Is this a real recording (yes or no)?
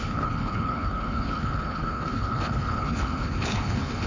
no